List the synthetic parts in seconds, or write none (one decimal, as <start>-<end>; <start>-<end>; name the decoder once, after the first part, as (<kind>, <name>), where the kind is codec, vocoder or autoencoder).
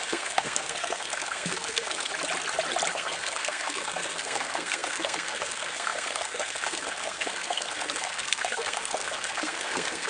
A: 0.0-2.1 (codec, SNAC); 2.9-10.1